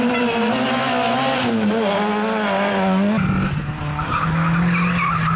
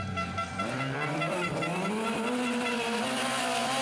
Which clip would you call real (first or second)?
first